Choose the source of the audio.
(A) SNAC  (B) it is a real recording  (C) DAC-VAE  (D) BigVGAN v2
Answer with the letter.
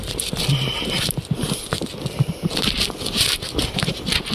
D